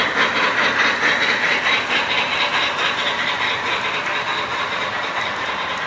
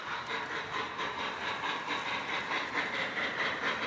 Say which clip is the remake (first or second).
second